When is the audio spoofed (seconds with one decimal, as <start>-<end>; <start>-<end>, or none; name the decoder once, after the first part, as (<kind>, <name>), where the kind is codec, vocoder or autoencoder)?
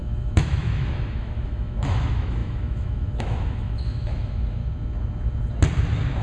0.0-4.6 (autoencoder, DAC-VAE)